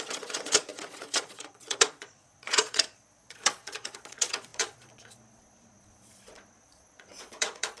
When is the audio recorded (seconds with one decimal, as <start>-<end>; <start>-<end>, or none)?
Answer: none